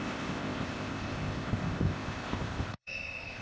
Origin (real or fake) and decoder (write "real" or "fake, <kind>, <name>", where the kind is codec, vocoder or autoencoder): fake, codec, ZipCodec